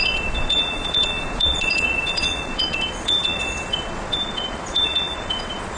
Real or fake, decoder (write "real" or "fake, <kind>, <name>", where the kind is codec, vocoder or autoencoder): fake, vocoder, Vocos